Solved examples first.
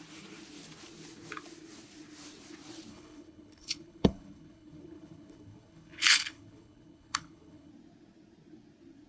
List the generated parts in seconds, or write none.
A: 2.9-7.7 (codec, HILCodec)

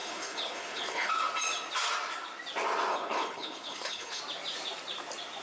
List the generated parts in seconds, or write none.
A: 0.0-1.1 (codec, HILCodec); 2.9-4.2

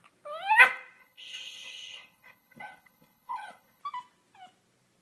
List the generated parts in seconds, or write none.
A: 1.0-3.8 (codec, HILCodec)